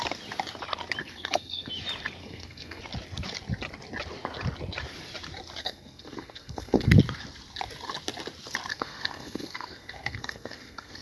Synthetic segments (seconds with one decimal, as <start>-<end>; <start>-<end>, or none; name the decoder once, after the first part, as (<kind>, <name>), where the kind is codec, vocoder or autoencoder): 1.0-1.7 (codec, SNAC); 2.2-2.8; 5.6-6.9; 8.7-11.0